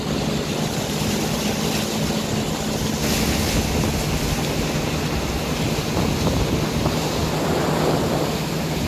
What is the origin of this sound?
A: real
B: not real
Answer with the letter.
A